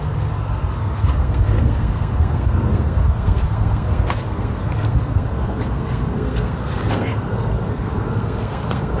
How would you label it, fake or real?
fake